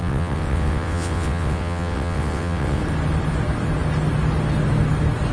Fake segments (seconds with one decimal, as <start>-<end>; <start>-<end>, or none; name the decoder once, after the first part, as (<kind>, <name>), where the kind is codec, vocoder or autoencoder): 0.0-2.8 (vocoder, WaveNeXt)